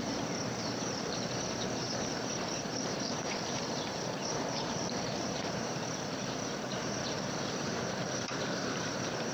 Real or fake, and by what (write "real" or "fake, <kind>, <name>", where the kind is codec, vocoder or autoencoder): fake, vocoder, BigVGAN v2